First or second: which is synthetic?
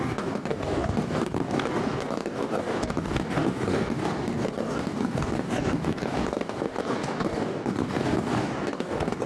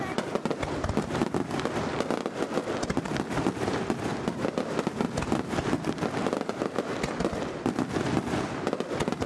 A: first